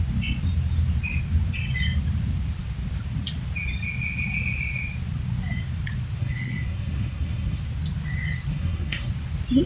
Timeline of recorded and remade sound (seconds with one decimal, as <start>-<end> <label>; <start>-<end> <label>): 0.0-6.2 recorded; 6.2-7.6 remade; 7.6-8.5 recorded; 8.5-9.1 remade; 9.1-9.7 recorded